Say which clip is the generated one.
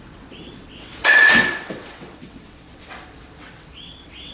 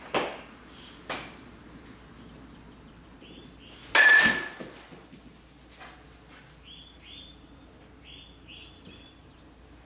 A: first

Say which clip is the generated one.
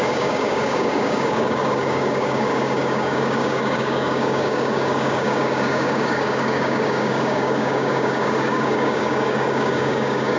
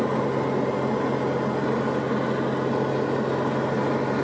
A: first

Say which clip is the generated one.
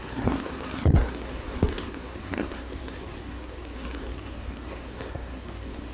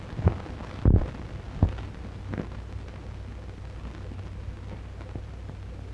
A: first